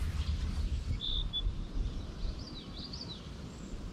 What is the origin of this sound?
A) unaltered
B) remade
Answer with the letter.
A